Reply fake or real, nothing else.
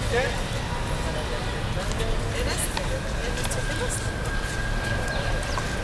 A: real